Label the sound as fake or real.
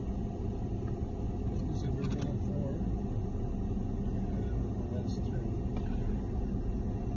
real